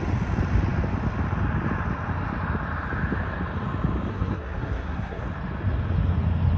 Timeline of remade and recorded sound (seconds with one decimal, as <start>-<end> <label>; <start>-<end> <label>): 0.0-4.1 recorded; 4.1-5.2 remade; 5.2-6.6 recorded

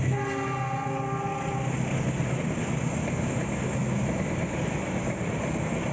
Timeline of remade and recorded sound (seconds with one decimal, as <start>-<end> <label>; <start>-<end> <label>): 0.0-5.9 recorded